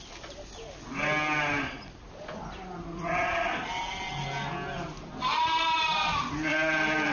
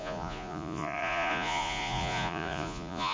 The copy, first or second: second